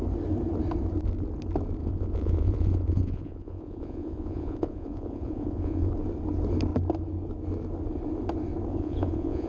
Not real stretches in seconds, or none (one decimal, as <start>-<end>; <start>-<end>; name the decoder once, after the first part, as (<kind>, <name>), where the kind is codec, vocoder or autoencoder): 1.8-5.9 (vocoder, Vocos); 8.7-9.5